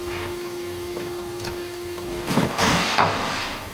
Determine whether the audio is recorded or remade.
remade